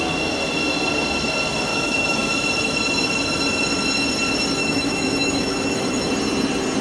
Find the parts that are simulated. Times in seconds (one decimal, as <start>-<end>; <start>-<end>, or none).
1.7-2.3; 4.6-6.1